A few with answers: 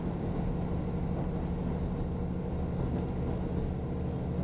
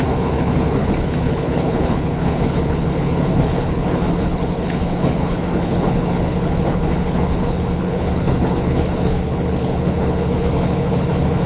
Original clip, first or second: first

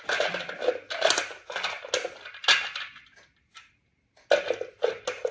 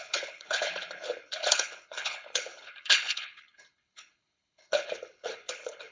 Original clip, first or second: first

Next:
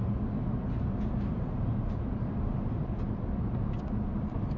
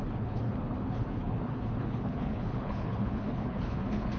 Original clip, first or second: first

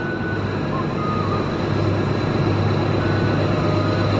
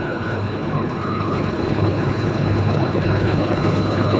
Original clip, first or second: first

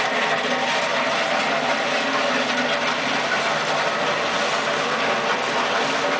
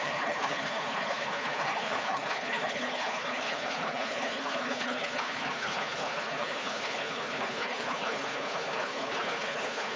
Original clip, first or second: first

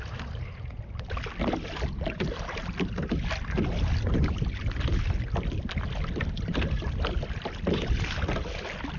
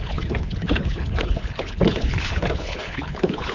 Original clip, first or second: first